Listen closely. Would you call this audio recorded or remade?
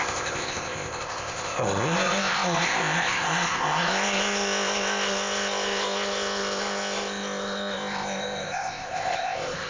remade